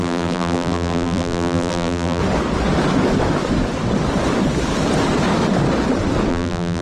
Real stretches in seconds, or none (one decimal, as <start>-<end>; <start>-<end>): 2.2-6.3